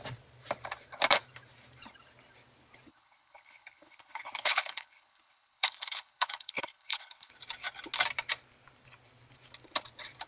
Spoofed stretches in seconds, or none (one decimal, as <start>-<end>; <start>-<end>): 2.9-7.3